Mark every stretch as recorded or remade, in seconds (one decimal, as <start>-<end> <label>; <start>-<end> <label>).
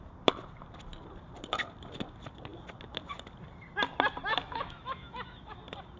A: 0.0-4.3 recorded; 4.3-5.6 remade; 5.6-6.0 recorded